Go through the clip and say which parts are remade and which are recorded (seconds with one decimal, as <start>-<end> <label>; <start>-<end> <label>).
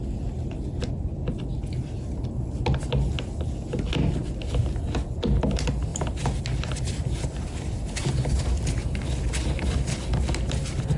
0.0-11.0 recorded